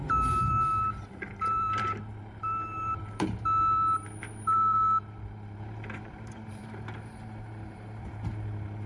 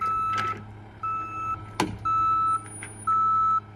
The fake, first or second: first